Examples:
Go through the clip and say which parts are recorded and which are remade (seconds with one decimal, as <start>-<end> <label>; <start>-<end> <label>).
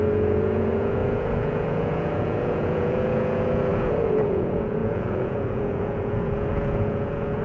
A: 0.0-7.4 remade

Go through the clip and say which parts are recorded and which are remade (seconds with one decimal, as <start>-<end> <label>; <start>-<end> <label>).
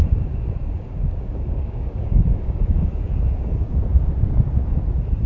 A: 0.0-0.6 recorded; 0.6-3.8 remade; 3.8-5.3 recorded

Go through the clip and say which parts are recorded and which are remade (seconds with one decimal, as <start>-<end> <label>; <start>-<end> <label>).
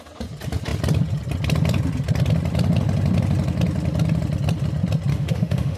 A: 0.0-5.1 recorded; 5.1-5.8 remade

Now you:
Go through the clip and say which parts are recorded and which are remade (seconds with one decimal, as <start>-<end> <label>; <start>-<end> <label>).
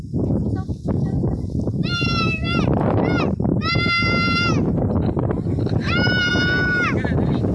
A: 0.0-1.8 recorded; 1.8-6.3 remade; 6.3-7.5 recorded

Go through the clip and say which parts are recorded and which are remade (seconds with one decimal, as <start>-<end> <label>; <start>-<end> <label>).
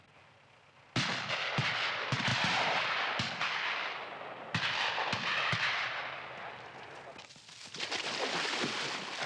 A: 0.0-9.3 recorded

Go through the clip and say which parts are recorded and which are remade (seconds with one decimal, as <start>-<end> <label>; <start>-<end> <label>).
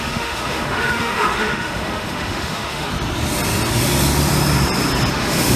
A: 0.0-2.9 remade; 2.9-5.1 recorded; 5.1-5.6 remade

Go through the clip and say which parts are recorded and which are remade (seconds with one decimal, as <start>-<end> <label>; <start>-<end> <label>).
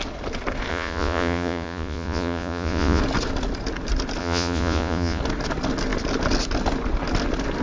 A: 0.0-0.7 recorded; 0.7-3.0 remade; 3.0-4.2 recorded; 4.2-5.2 remade; 5.2-7.6 recorded